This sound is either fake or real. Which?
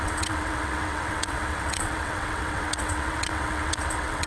fake